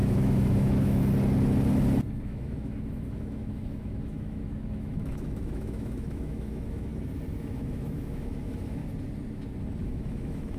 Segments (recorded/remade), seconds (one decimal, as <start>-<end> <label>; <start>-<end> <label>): 0.0-1.0 remade; 1.0-2.2 recorded; 2.2-6.9 remade; 6.9-7.4 recorded; 7.4-8.8 remade; 8.8-9.8 recorded; 9.8-10.6 remade